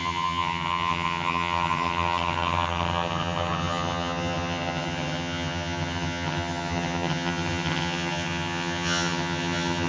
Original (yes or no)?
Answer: no